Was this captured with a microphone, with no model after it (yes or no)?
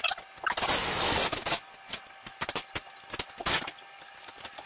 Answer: yes